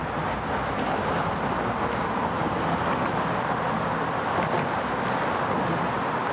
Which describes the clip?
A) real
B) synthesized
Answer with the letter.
A